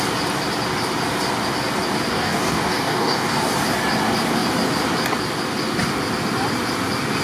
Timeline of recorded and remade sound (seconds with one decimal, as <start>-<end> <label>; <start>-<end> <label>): 0.0-2.1 recorded; 2.1-3.5 remade; 3.5-7.2 recorded